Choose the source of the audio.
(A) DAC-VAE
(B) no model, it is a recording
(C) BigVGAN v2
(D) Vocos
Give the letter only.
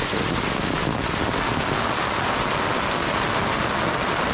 B